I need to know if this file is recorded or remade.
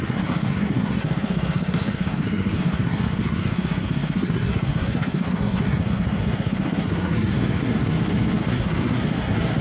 remade